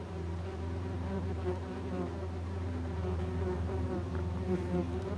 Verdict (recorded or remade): remade